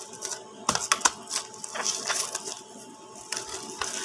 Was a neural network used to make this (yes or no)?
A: no